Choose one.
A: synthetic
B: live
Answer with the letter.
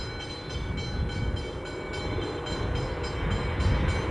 B